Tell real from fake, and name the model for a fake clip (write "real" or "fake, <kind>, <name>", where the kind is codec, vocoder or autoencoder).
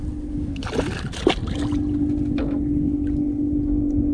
real